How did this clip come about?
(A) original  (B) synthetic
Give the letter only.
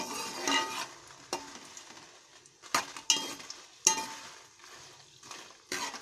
A